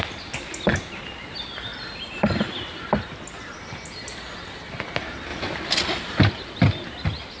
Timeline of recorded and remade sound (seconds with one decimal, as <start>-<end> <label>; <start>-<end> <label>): 0.0-7.4 recorded